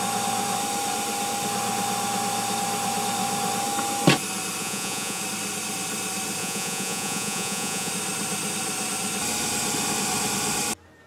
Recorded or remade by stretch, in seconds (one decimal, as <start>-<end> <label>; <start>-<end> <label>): 0.0-4.6 recorded; 4.6-5.2 remade; 5.2-6.4 recorded; 6.4-7.9 remade; 7.9-11.1 recorded